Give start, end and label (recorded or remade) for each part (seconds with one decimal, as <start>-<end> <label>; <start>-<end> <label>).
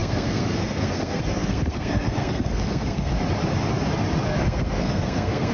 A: 0.0-3.1 remade; 3.1-4.4 recorded; 4.4-5.5 remade